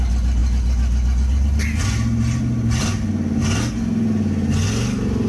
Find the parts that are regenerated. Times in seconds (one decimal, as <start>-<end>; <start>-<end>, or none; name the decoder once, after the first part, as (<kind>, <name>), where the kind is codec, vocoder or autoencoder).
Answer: none